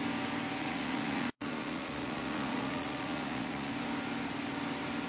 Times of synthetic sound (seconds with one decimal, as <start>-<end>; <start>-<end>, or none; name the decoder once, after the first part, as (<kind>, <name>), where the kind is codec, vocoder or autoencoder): 0.6-3.7 (vocoder, Vocos)